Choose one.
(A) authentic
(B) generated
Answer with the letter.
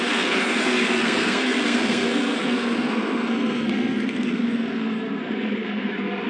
B